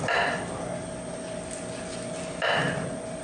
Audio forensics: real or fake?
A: real